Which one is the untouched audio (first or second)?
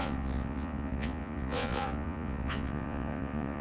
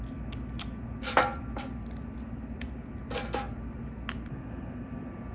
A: second